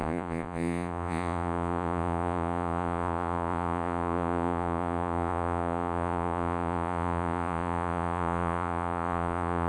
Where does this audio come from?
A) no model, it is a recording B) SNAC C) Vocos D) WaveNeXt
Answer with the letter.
C